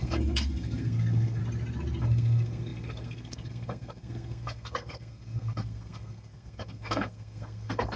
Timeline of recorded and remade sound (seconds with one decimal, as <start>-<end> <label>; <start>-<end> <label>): 0.0-1.4 remade; 1.4-2.0 recorded; 2.0-8.0 remade